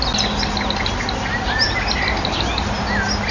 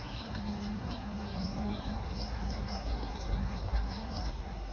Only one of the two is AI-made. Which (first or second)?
second